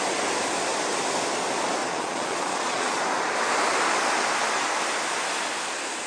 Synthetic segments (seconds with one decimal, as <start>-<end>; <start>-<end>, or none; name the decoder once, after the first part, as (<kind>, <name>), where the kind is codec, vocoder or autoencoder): 1.8-3.0 (vocoder, Vocos)